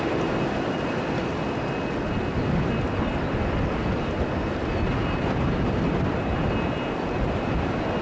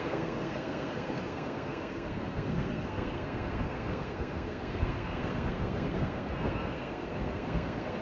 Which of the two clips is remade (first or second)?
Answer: second